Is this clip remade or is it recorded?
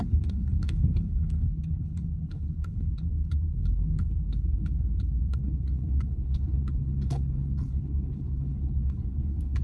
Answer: remade